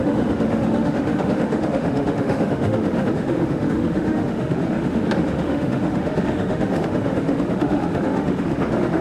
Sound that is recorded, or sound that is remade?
remade